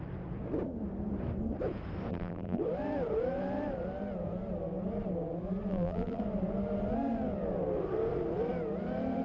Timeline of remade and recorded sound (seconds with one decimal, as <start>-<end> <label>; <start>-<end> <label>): 0.0-2.1 recorded; 2.1-2.6 remade; 2.6-5.7 recorded; 5.7-6.2 remade; 6.2-9.2 recorded